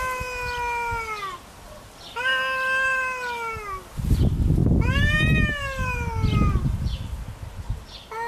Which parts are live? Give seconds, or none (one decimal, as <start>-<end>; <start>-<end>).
0.0-8.3